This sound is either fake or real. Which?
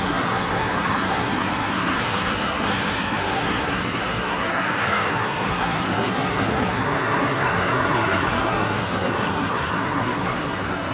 fake